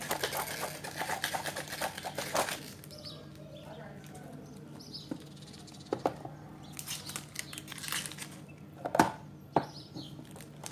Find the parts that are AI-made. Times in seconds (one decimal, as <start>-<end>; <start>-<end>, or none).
none